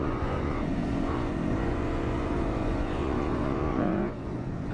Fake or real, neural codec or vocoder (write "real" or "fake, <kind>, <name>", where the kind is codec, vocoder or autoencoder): fake, vocoder, Vocos